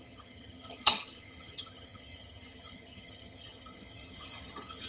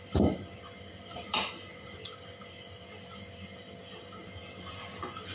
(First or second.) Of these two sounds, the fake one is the first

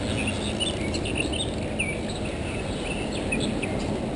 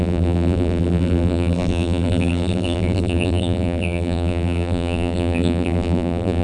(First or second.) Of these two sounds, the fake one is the second